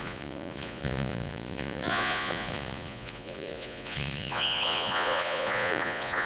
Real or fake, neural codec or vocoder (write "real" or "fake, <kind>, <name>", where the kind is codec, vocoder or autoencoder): fake, vocoder, Vocos